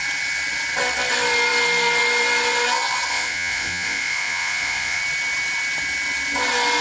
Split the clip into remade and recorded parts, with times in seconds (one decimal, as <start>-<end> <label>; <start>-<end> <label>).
0.0-3.1 recorded; 3.1-5.0 remade; 5.0-6.8 recorded